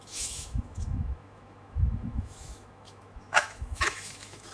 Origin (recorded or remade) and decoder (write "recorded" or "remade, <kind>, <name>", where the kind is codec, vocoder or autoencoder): remade, autoencoder, DAC-VAE